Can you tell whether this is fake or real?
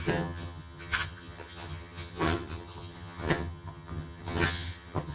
fake